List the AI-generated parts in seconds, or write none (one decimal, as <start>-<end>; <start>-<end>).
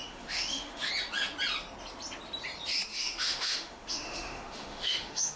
0.0-0.9; 2.9-5.4